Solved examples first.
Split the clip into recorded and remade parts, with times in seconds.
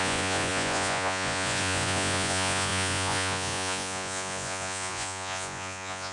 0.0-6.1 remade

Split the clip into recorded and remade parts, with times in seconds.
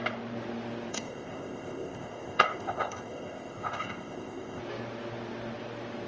0.0-0.9 recorded; 0.9-4.6 remade; 4.6-6.1 recorded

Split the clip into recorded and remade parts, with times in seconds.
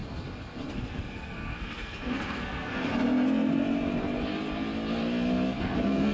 0.0-0.7 recorded; 0.7-2.9 remade; 2.9-5.6 recorded; 5.6-6.1 remade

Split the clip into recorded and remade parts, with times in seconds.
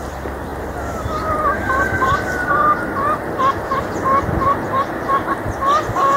0.0-0.5 recorded; 0.5-2.5 remade; 2.5-6.2 recorded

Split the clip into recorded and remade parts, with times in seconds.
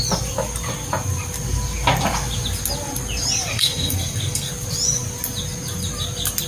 0.0-3.5 recorded; 3.5-4.5 remade; 4.5-6.5 recorded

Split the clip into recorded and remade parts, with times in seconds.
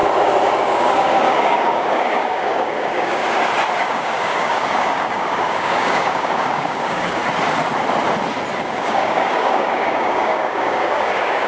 0.0-0.6 recorded; 0.6-3.2 remade; 3.2-3.8 recorded; 3.8-7.2 remade; 7.2-8.6 recorded; 8.6-11.5 remade